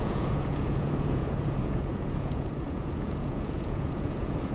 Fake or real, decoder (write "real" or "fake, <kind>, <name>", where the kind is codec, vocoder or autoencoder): fake, vocoder, Vocos